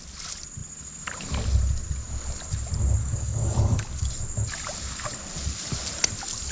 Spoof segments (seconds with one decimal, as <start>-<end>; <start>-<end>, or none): 3.0-4.1